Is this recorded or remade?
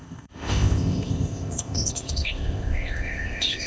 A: remade